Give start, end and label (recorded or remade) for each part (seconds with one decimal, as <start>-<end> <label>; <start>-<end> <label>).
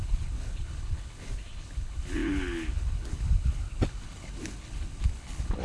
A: 0.0-5.6 remade